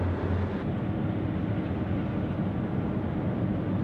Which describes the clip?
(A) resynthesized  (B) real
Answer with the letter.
B